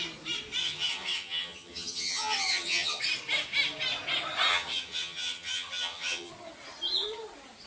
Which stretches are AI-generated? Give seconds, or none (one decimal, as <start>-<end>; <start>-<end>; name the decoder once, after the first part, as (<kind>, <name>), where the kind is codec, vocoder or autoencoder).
0.6-3.0 (vocoder, HiFi-GAN); 4.5-6.3